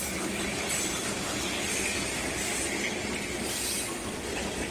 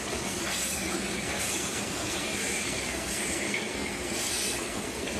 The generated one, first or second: second